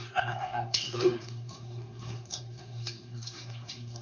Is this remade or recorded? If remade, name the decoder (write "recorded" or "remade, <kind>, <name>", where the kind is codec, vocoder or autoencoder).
remade, codec, SNAC